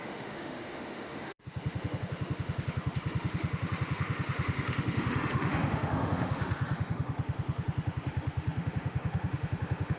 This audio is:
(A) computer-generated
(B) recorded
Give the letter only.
A